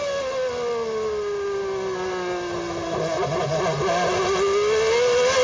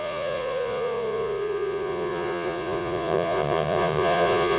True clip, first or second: first